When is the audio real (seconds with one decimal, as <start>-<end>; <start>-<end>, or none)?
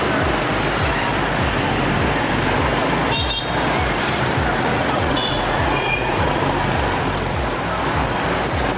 0.0-4.7; 6.4-8.8